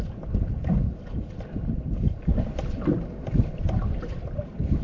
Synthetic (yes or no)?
no